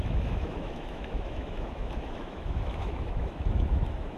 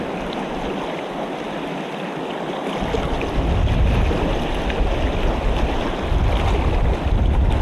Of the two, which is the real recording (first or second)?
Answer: second